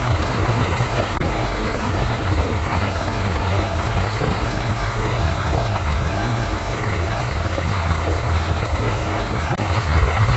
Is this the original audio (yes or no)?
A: no